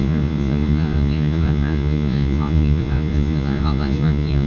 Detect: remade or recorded remade